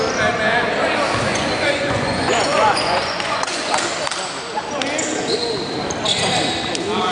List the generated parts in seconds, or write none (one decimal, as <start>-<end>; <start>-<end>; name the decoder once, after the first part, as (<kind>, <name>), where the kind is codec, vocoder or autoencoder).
1.3-3.7 (vocoder, Vocos)